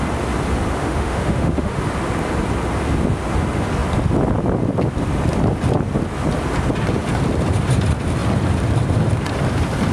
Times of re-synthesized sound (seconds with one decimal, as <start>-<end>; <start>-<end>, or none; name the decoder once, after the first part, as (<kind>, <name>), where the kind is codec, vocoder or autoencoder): 0.8-1.8 (autoencoder, DAC-VAE)